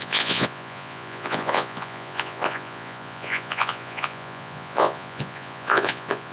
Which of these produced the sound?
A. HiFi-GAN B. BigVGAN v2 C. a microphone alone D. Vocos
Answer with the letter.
D